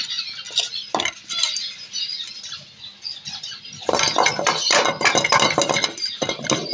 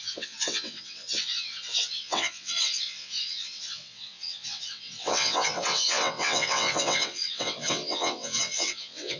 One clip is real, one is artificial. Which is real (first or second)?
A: first